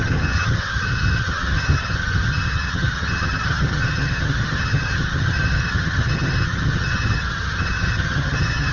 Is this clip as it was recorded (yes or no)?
no